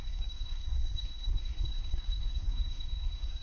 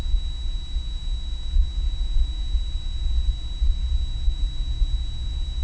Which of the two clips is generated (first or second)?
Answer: first